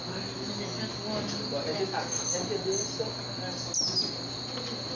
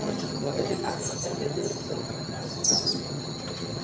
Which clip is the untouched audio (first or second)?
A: first